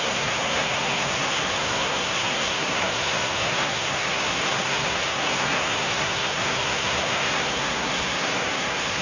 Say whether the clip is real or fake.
fake